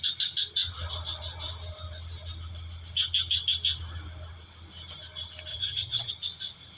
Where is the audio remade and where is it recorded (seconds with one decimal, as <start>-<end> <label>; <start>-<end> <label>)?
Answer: 0.0-5.5 recorded; 5.5-6.1 remade; 6.1-6.8 recorded

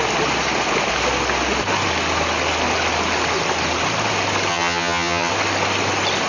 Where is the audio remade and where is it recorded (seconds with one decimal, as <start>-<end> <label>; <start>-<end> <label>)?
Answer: 0.0-4.5 recorded; 4.5-5.3 remade; 5.3-6.3 recorded

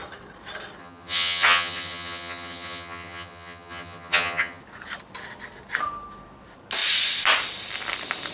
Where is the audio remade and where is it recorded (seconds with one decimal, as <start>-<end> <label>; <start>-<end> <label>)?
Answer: 0.0-0.8 recorded; 0.8-4.6 remade; 4.6-8.3 recorded

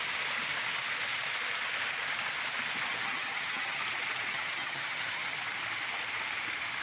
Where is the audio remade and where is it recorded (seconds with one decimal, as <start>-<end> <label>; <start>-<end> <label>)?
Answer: 0.0-2.9 recorded; 2.9-3.8 remade; 3.8-4.3 recorded; 4.3-5.3 remade; 5.3-6.8 recorded